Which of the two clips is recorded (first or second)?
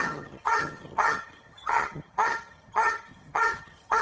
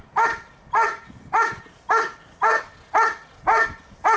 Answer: second